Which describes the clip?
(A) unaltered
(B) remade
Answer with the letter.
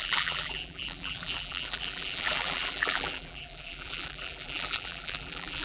B